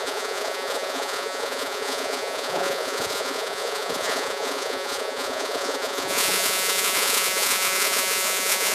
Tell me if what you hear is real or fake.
fake